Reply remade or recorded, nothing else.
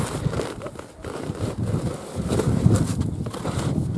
recorded